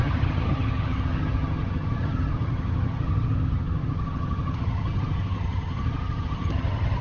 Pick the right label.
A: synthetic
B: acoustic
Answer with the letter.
A